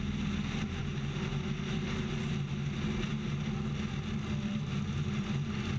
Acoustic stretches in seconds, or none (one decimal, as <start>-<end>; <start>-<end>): 0.0-5.8

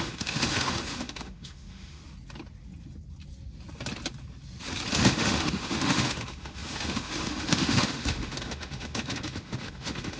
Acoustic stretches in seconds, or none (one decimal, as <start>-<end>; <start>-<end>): 2.0-4.9

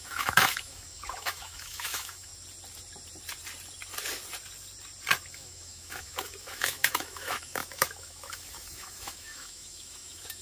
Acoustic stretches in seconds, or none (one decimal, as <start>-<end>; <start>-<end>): 2.3-5.3

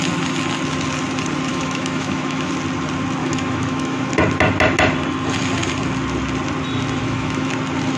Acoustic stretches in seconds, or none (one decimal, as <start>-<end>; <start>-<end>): 0.0-1.5; 2.5-3.2; 4.1-7.0; 7.5-8.0

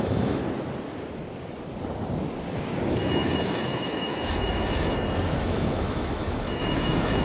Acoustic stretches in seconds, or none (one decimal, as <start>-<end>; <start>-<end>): 0.4-2.9

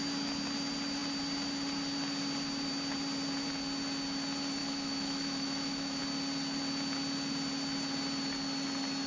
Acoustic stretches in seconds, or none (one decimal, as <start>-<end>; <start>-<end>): 0.0-4.6; 6.0-9.1

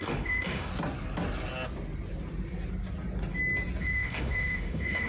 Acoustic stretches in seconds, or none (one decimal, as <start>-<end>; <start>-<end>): 0.7-3.8